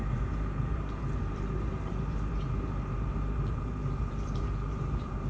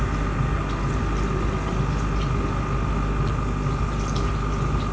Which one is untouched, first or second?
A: second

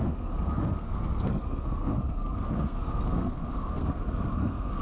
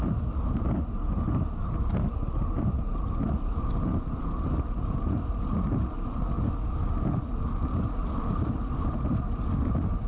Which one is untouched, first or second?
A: second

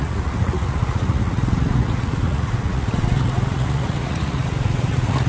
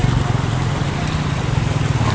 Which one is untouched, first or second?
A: second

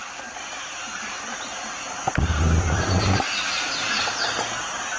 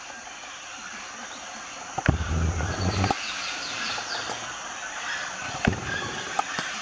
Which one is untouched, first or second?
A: first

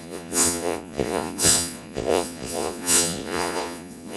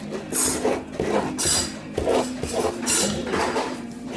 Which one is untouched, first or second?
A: second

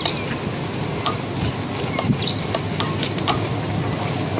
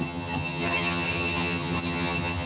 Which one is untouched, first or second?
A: first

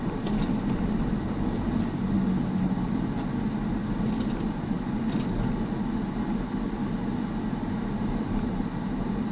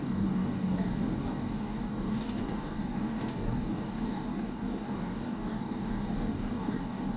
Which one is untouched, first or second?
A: first